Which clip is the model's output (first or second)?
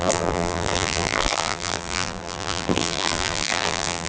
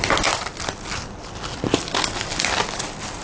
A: first